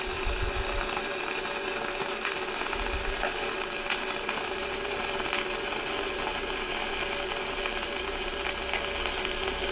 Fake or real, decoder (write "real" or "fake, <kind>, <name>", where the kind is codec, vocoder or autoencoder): real